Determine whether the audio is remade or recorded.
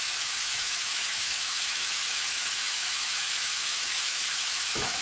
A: remade